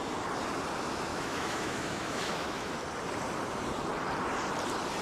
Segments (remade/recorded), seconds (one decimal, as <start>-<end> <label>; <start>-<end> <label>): 0.0-1.1 recorded; 1.1-2.7 remade; 2.7-5.0 recorded